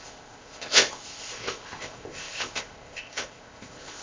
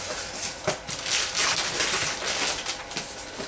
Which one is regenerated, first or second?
first